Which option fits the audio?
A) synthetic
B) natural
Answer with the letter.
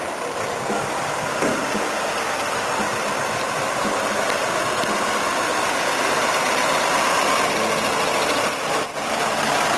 B